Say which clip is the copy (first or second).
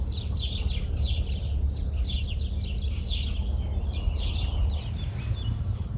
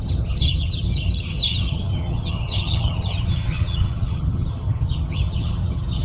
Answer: second